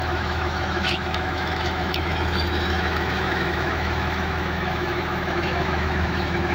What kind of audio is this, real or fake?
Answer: fake